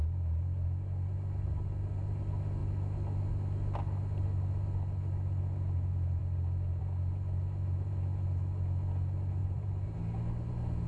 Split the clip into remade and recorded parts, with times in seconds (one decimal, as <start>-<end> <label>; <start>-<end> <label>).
0.0-9.4 recorded; 9.4-10.0 remade; 10.0-10.9 recorded